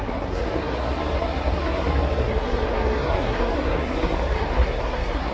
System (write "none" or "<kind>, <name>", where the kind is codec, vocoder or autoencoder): codec, SNAC